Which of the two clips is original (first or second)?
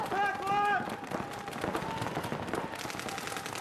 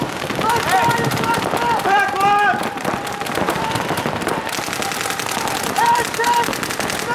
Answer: first